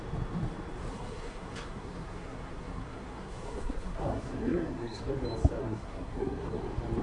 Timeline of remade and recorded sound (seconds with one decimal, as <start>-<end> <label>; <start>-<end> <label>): 0.0-0.9 recorded; 0.9-5.1 remade; 5.1-5.6 recorded; 5.6-6.6 remade; 6.6-7.0 recorded